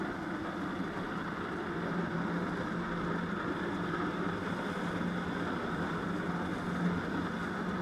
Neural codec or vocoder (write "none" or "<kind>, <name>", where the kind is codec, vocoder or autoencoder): none